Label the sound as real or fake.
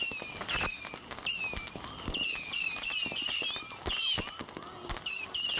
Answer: real